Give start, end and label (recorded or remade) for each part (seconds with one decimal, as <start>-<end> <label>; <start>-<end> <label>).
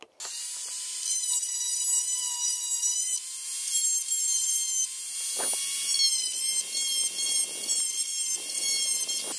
0.0-9.4 recorded